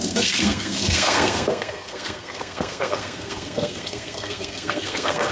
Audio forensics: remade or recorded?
remade